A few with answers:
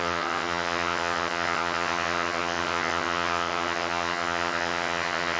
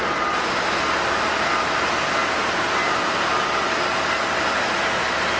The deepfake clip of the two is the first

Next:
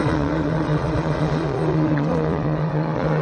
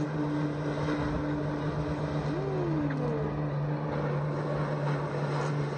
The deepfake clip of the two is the first